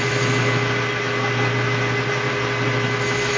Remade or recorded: recorded